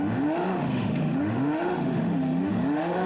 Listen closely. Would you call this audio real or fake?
fake